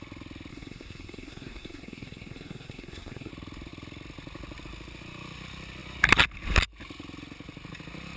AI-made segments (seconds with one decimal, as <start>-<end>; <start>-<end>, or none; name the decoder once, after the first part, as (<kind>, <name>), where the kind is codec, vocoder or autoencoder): 0.5-3.3 (codec, SNAC)

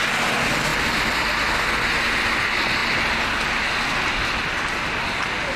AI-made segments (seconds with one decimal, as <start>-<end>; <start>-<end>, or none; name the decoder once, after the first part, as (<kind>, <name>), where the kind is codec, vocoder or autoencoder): none

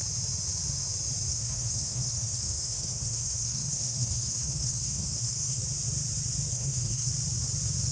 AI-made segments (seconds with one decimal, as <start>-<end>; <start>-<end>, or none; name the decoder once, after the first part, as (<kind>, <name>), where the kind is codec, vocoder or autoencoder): 1.3-5.6 (codec, SNAC); 6.5-7.1

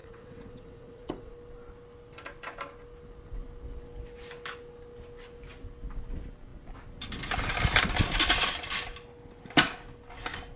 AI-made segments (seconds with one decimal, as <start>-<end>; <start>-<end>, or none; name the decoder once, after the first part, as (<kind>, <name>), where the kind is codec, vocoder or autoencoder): 0.0-1.3 (vocoder, WaveNeXt)

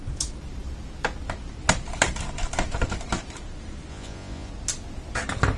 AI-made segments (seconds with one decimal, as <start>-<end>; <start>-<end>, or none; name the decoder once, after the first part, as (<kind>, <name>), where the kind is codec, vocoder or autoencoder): 3.9-4.5 (vocoder, Vocos)

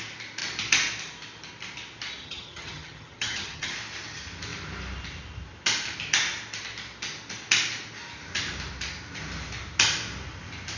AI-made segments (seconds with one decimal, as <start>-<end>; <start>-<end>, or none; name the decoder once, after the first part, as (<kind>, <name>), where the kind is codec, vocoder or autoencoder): 2.2-3.7 (vocoder, HiFi-GAN)

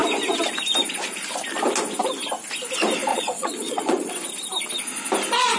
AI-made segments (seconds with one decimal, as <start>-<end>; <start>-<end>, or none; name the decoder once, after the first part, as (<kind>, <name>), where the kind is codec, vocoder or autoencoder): 3.1-4.1 (vocoder, Vocos)